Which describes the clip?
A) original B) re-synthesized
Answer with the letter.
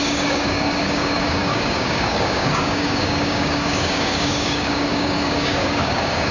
B